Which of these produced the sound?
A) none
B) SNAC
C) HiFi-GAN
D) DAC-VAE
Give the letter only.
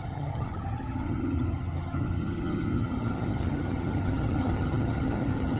C